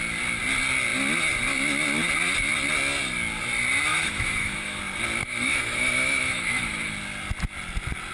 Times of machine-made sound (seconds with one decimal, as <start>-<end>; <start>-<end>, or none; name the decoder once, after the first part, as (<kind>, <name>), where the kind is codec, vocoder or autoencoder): 3.9-4.8 (autoencoder, DAC-VAE); 5.2-6.9